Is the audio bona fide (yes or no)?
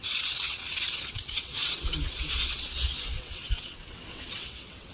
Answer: no